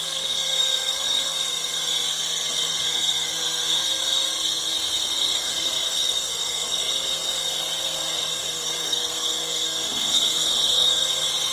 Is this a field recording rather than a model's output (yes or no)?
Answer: no